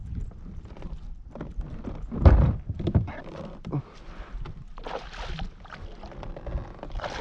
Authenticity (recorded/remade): recorded